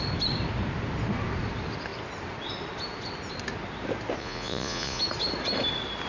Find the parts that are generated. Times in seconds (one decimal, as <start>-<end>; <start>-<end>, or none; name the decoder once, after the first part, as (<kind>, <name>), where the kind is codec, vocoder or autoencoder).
4.2-5.0 (vocoder, Vocos)